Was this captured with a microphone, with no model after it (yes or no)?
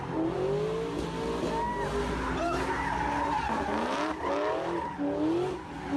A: yes